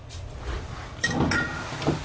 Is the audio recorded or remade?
recorded